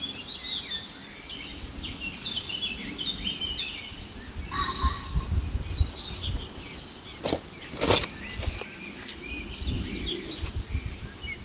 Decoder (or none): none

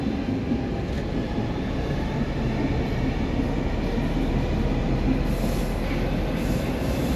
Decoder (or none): none